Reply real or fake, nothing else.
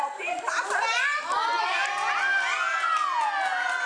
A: real